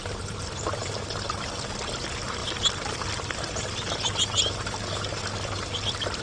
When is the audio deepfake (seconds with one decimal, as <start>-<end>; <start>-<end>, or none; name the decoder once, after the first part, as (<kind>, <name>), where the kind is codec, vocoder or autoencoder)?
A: none